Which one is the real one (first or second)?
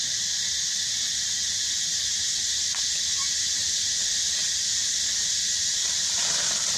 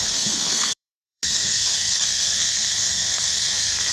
first